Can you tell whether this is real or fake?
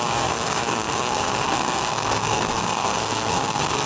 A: fake